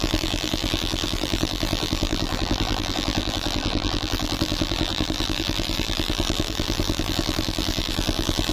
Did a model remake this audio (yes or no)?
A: yes